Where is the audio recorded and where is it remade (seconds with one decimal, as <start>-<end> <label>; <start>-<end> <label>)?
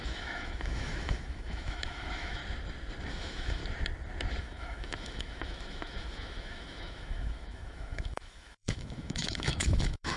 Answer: 0.0-2.4 remade; 2.4-3.1 recorded; 3.1-3.6 remade; 3.6-4.4 recorded; 4.4-10.2 remade